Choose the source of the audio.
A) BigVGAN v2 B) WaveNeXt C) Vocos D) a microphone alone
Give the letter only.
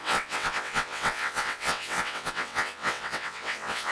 B